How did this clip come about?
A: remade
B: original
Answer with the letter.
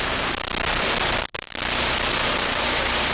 A